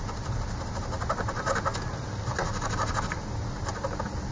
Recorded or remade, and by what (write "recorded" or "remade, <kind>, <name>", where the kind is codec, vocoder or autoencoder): recorded